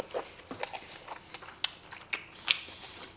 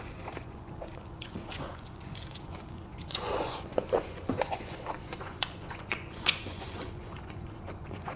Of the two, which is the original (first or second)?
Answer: first